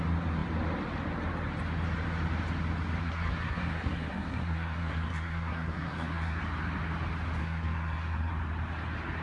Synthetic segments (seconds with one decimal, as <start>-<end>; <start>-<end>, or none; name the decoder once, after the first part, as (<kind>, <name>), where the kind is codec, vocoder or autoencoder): 3.0-6.4 (codec, SNAC); 7.4-8.3